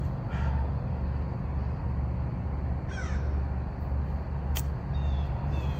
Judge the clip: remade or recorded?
recorded